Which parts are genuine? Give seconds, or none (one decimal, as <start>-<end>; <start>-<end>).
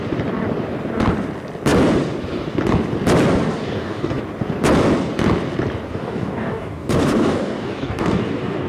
0.0-3.5; 4.2-5.9